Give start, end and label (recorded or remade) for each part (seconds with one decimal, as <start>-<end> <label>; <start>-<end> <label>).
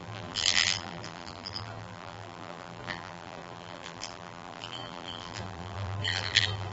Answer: 0.0-6.7 remade